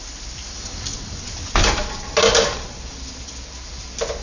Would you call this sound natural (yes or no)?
yes